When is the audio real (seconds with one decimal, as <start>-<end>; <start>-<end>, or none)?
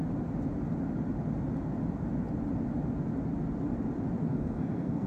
0.0-4.3